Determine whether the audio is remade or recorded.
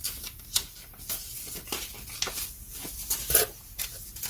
recorded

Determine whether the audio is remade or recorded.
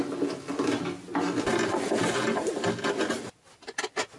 recorded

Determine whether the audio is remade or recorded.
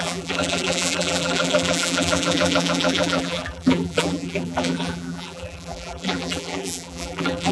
remade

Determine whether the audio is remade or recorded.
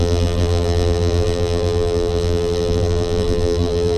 remade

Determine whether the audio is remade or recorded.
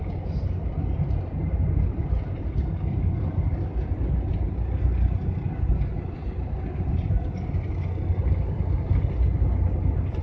recorded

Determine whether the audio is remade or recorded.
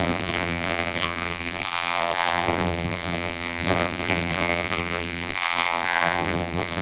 remade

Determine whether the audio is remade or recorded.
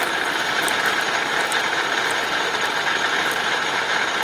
remade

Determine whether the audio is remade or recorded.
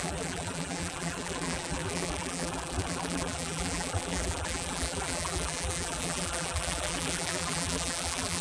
remade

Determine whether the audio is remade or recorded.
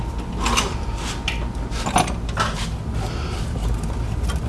recorded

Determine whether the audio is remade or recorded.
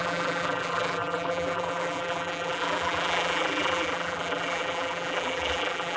remade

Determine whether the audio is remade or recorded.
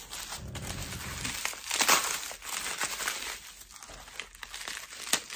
recorded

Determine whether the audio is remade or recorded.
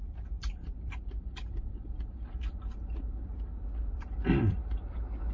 remade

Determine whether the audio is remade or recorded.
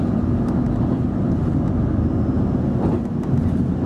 recorded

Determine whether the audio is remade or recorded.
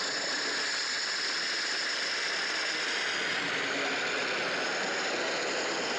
recorded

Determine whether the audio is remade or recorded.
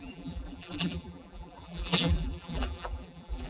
remade